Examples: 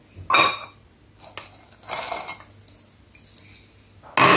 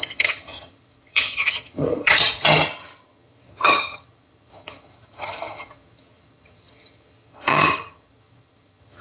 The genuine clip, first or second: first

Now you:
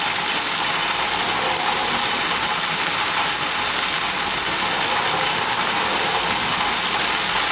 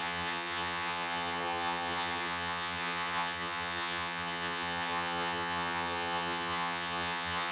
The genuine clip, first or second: first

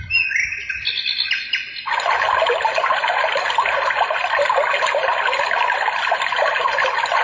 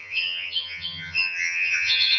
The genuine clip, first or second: first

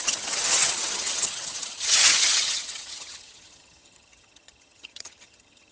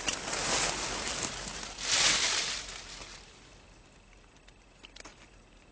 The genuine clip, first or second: second